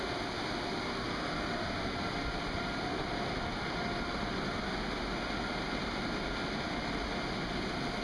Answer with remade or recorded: recorded